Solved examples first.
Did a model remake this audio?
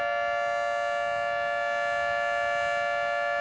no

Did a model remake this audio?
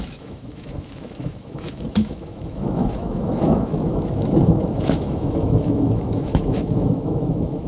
yes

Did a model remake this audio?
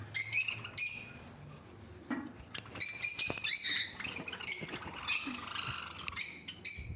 no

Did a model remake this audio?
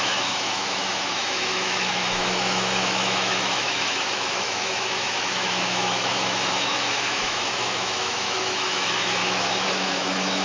yes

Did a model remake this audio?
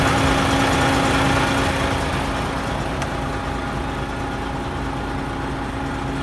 no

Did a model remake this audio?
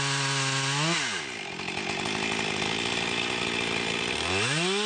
no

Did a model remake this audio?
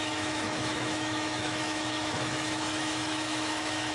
yes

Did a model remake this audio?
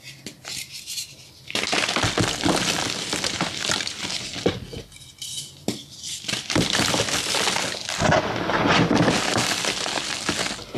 no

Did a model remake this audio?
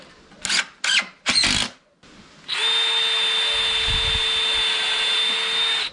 no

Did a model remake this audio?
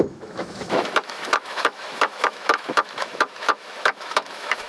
yes